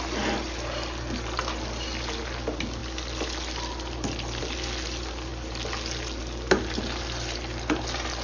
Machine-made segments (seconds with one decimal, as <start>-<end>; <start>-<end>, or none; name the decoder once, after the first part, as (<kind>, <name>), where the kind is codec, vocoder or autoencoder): none